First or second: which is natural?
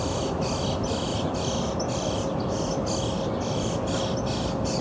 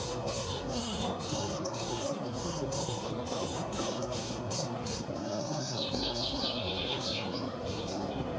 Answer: first